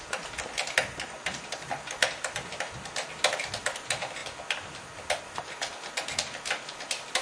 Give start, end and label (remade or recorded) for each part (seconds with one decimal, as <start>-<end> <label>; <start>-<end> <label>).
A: 0.0-7.2 recorded